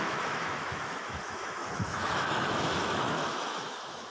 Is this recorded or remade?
remade